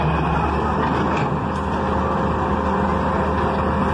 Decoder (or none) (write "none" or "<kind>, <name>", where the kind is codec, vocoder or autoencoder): none